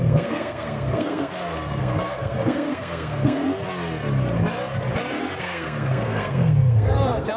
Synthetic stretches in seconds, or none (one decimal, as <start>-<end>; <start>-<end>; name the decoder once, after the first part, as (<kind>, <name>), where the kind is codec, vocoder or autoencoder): 0.0-3.4 (codec, SNAC); 5.4-7.4